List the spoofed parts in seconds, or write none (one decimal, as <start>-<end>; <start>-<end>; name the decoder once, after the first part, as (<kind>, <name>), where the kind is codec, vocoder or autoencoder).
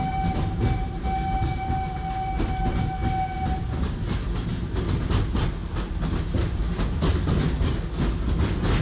none